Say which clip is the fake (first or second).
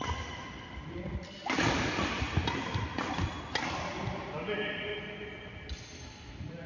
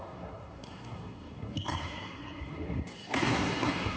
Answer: second